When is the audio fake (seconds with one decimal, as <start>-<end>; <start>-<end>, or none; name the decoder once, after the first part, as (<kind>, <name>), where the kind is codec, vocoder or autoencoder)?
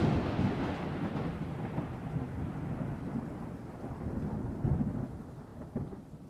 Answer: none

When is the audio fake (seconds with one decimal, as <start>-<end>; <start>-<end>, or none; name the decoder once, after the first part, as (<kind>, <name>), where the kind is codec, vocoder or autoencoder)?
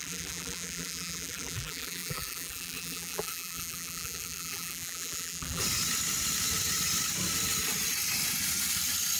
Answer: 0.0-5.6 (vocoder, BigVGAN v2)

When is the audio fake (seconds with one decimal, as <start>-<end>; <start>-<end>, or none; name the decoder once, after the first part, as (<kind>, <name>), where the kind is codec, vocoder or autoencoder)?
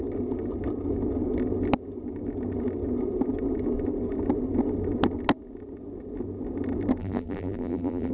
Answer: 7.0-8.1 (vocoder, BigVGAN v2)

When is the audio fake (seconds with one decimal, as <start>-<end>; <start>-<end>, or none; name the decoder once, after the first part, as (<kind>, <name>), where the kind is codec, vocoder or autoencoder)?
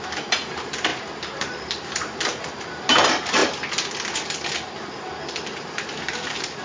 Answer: 0.0-3.4 (vocoder, BigVGAN v2); 4.8-6.6